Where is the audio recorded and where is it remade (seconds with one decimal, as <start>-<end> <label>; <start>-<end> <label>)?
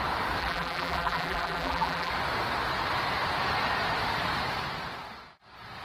0.0-0.4 recorded; 0.4-2.1 remade; 2.1-5.8 recorded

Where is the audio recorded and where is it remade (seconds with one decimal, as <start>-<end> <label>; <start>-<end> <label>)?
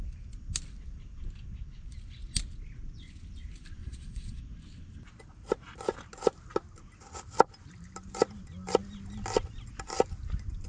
0.0-3.8 recorded; 3.8-4.4 remade; 4.4-10.7 recorded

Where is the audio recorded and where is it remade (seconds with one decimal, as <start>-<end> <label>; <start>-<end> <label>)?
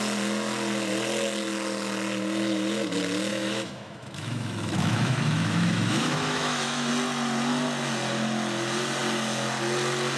0.0-3.3 recorded; 3.3-6.9 remade; 6.9-10.2 recorded